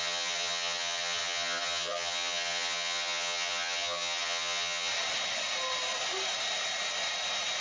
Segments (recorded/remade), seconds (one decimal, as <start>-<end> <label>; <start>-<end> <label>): 0.0-4.9 remade; 4.9-7.6 recorded

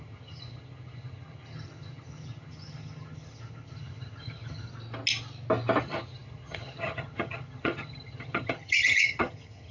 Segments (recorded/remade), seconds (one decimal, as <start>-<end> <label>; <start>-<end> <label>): 0.0-4.7 remade; 4.7-5.8 recorded; 5.8-9.7 remade

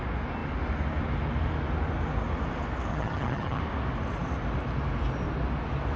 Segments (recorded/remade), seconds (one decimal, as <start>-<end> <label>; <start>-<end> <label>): 0.0-2.9 recorded; 2.9-3.6 remade; 3.6-6.0 recorded

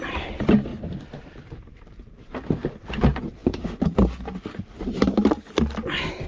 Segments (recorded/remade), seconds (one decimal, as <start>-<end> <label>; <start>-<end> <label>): 0.0-6.3 recorded